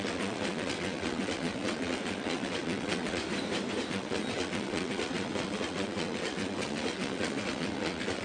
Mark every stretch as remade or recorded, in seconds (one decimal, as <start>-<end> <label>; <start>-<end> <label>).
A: 0.0-3.2 remade; 3.2-3.9 recorded; 3.9-8.2 remade